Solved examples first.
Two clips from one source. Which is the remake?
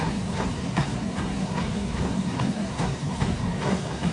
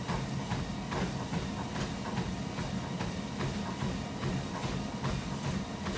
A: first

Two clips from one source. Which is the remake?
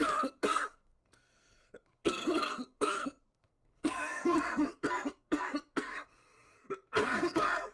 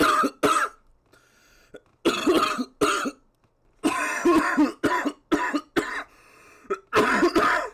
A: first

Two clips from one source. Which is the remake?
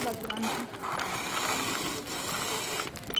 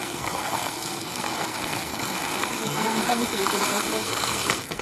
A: second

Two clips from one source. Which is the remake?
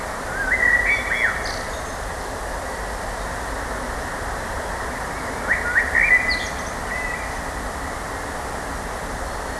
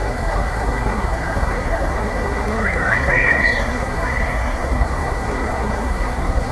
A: second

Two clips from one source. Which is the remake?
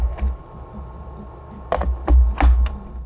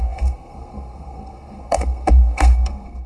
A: second